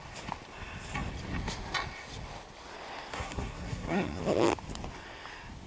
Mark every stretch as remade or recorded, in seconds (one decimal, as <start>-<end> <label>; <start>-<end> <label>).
0.0-3.1 recorded; 3.1-4.2 remade; 4.2-5.7 recorded